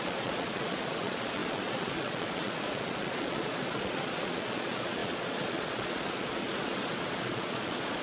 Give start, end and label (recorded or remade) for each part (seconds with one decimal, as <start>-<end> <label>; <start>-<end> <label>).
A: 0.0-8.0 remade